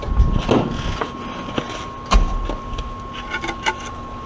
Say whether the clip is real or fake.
real